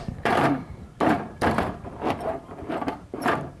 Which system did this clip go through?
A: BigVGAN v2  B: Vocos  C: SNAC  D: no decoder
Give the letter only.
A